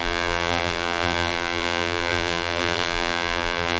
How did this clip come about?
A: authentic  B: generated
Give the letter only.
B